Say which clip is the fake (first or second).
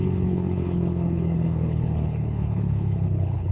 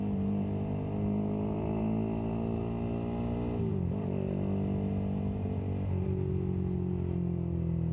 first